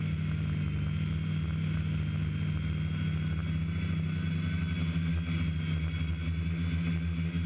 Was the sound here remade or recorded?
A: recorded